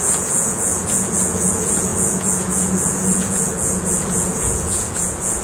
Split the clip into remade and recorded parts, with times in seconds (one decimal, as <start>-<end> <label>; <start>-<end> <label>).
0.0-5.4 remade